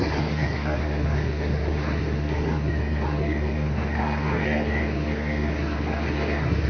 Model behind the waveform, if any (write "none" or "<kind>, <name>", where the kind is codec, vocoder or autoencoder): codec, SNAC